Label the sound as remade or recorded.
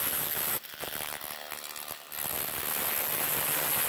recorded